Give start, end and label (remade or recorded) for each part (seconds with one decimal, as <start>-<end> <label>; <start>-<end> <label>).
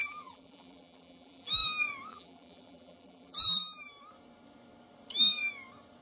0.0-1.5 remade; 1.5-2.1 recorded; 2.1-3.9 remade; 3.9-6.0 recorded